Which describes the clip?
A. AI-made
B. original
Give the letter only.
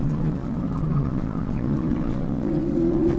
A